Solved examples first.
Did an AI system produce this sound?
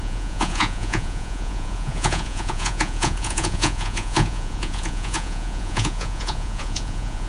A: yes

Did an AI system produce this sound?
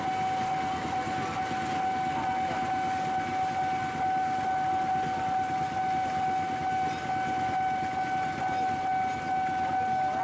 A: no